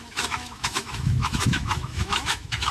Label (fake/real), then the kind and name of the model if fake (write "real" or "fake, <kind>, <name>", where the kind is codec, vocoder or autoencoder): fake, autoencoder, DAC-VAE